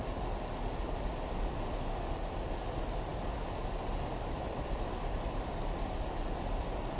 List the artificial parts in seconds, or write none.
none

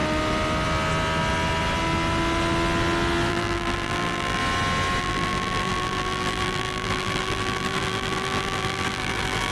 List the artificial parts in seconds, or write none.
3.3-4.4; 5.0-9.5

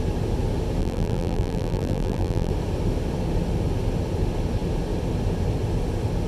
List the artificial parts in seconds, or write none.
0.8-2.5

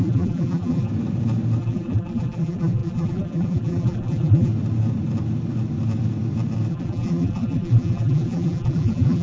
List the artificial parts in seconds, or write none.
0.0-0.9; 1.6-4.5; 6.7-9.2

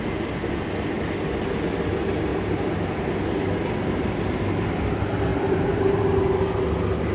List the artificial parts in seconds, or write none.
2.3-3.1; 5.3-6.0

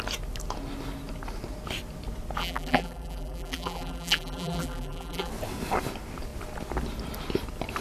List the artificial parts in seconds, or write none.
2.4-5.3

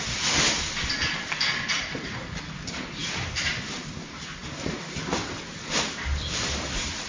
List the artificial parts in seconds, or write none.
3.0-4.0; 4.4-7.1